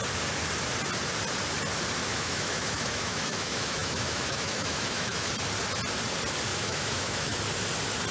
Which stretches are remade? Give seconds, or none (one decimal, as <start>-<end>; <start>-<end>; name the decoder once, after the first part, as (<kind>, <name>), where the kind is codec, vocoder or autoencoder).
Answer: 2.0-5.3 (autoencoder, DAC-VAE); 6.5-7.4

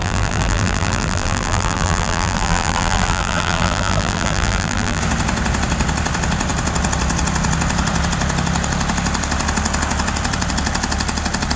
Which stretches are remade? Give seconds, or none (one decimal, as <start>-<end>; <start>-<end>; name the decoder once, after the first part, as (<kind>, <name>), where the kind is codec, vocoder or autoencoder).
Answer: 0.0-5.0 (vocoder, BigVGAN v2)

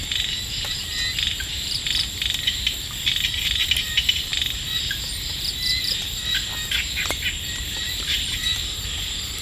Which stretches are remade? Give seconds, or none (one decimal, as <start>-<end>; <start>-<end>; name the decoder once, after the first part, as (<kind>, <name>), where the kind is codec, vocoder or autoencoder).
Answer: 0.0-9.4 (vocoder, BigVGAN v2)

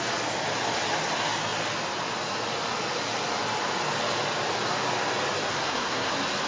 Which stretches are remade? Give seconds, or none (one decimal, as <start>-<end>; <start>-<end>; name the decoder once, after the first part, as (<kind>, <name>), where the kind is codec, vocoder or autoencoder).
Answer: 5.5-6.1 (codec, SNAC)

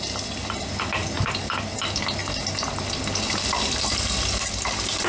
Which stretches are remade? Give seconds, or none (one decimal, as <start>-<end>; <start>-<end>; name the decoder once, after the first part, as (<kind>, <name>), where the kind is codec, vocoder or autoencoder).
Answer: none

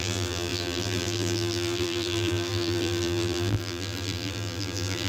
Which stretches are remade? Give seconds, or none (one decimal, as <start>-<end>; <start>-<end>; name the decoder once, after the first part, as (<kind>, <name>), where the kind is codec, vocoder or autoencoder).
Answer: 0.0-5.1 (vocoder, BigVGAN v2)

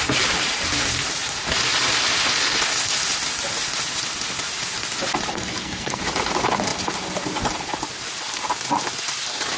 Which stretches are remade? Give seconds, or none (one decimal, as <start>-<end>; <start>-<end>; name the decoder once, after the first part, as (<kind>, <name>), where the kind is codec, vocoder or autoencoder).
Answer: 5.3-6.0 (codec, SNAC)